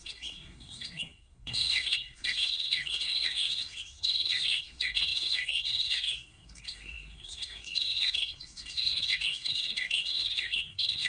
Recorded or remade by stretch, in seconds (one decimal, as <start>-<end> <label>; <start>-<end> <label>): 0.0-11.1 remade

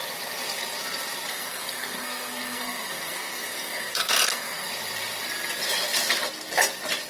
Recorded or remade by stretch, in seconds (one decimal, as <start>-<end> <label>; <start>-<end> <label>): 0.0-1.3 recorded; 1.3-4.7 remade; 4.7-7.1 recorded

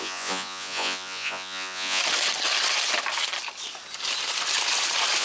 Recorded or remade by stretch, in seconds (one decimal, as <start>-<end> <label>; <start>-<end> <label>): 0.0-2.0 remade; 2.0-5.2 recorded

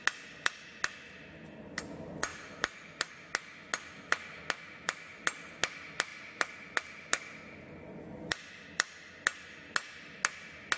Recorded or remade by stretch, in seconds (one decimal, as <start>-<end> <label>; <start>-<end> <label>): 0.0-2.3 recorded; 2.3-3.1 remade; 3.1-10.8 recorded

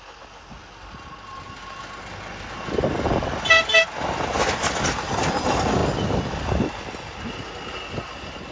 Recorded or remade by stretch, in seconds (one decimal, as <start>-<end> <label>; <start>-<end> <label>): 0.0-8.5 recorded

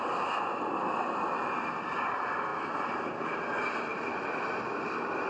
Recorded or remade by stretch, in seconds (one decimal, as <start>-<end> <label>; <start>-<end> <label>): 0.0-3.9 recorded; 3.9-5.3 remade

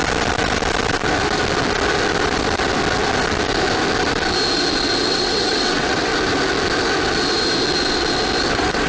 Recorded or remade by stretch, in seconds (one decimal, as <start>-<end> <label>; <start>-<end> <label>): 0.0-5.0 recorded; 5.0-6.1 remade; 6.1-8.5 recorded; 8.5-8.9 remade

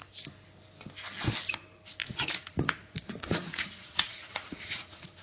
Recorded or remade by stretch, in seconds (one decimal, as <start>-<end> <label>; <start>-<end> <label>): 0.0-2.0 recorded; 2.0-5.2 remade